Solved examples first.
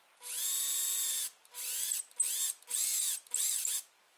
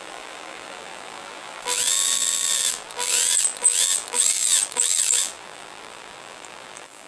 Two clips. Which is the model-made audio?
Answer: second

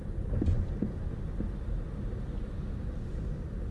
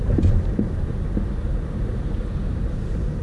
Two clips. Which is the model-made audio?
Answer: second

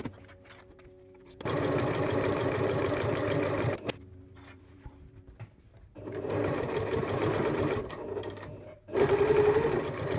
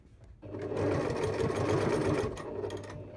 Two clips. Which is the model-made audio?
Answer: first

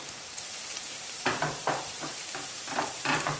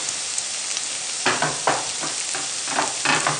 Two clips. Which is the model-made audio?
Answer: first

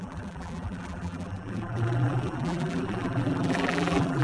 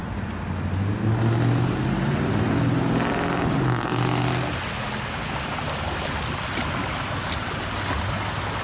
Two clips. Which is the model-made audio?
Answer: first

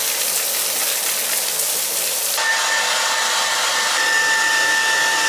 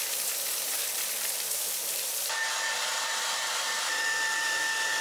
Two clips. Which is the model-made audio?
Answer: second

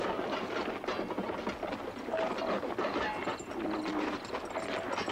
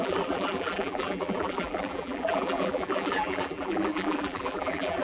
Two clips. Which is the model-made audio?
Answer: second